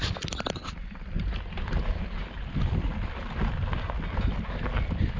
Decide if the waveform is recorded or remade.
recorded